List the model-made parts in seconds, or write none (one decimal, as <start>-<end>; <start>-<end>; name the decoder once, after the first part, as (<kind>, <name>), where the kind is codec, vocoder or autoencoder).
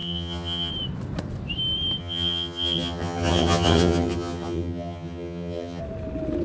0.0-0.7 (vocoder, HiFi-GAN); 2.0-5.8